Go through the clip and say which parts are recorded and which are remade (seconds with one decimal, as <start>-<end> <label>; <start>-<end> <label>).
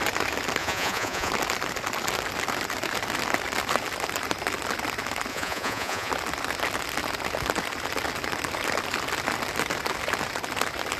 0.0-0.6 recorded; 0.6-1.3 remade; 1.3-5.3 recorded; 5.3-6.1 remade; 6.1-11.0 recorded